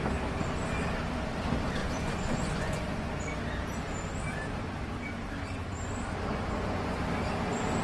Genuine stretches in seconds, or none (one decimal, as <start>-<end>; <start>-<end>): 0.0-1.8; 3.1-6.3; 7.0-7.8